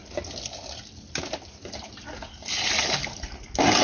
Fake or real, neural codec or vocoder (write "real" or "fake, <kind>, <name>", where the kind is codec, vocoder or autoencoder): real